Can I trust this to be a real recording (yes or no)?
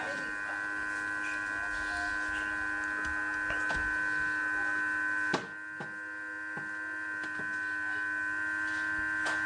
yes